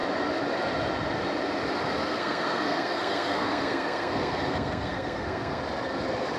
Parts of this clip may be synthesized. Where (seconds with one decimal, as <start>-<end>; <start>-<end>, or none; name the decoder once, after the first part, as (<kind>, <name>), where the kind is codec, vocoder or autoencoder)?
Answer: 2.0-5.6 (codec, SNAC)